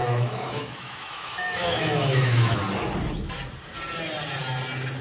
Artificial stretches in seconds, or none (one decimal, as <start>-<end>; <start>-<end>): 0.0-2.6